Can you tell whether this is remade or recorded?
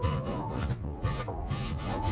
remade